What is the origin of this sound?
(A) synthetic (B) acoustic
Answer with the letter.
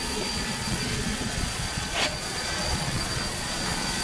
A